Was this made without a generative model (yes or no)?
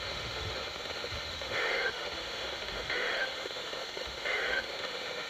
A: no